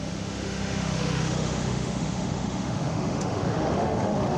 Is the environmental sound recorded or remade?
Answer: remade